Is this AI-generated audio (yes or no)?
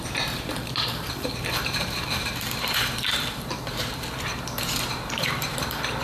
yes